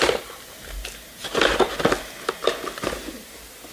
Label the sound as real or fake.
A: real